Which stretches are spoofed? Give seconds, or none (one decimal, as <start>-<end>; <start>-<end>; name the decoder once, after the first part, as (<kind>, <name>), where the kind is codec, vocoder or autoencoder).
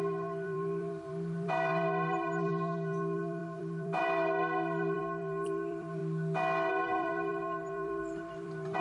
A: 0.0-6.0 (vocoder, BigVGAN v2); 6.7-8.8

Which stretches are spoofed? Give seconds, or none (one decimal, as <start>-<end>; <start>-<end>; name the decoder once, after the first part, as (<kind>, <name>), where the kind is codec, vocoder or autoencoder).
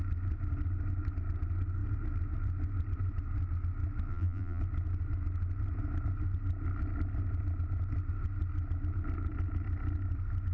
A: 4.1-4.6 (vocoder, BigVGAN v2)